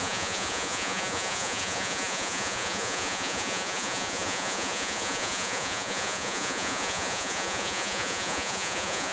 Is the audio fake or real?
fake